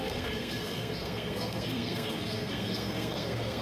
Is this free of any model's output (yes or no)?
no